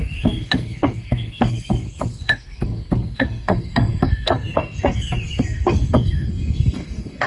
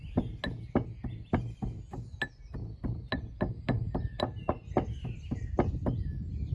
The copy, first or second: first